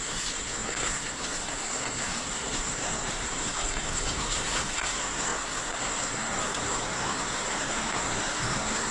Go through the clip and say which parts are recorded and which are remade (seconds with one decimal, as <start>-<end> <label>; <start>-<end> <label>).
0.0-8.9 remade

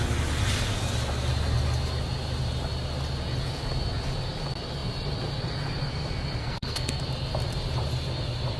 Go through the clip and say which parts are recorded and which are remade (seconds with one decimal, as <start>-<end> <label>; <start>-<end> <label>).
0.0-6.4 recorded; 6.4-7.0 remade; 7.0-8.6 recorded

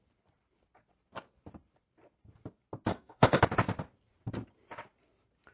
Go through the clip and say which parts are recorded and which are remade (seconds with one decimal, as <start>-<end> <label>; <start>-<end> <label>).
0.0-2.9 recorded; 2.9-3.4 remade; 3.4-5.5 recorded

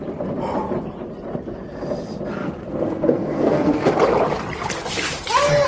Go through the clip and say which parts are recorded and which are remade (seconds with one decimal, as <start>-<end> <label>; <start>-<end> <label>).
0.0-2.4 recorded; 2.4-3.9 remade; 3.9-5.7 recorded

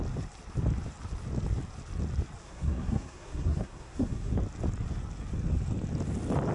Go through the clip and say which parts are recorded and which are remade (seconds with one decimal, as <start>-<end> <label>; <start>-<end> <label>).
0.0-2.4 recorded; 2.4-4.3 remade; 4.3-6.5 recorded